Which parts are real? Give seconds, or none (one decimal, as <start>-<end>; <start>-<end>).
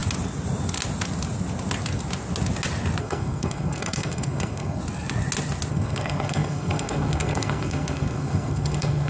0.0-3.0; 4.8-5.7